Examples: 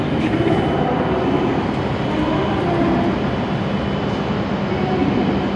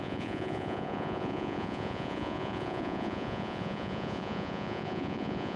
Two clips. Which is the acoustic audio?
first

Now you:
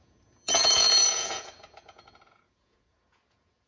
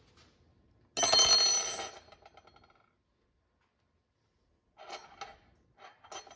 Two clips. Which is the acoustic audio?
second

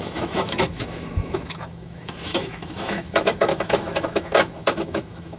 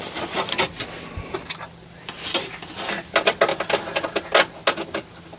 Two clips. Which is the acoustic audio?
second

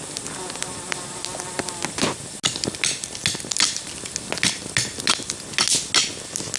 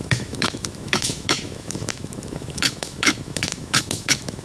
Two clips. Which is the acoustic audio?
first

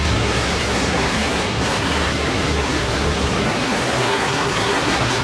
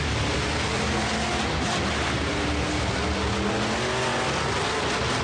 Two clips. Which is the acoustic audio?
second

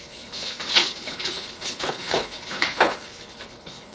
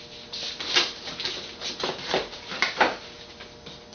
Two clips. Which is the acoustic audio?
second